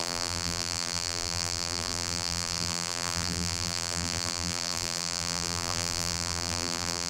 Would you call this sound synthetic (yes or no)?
yes